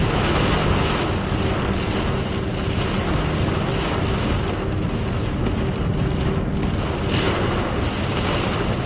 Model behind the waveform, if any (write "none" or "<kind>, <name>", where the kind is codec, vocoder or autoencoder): none